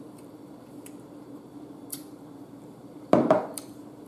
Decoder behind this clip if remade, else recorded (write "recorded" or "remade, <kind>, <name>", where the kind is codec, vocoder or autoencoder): remade, vocoder, BigVGAN v2